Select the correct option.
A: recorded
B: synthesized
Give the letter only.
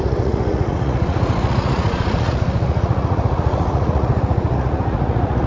B